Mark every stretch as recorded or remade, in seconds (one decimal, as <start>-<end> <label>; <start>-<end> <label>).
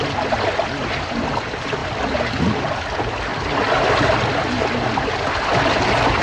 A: 0.0-6.2 recorded